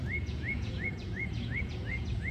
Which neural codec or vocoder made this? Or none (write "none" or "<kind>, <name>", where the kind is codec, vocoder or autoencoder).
vocoder, Vocos